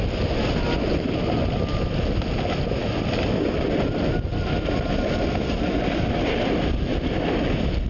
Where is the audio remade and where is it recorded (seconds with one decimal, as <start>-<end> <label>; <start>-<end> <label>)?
0.0-7.9 recorded